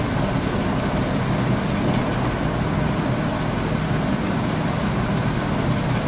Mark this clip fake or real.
real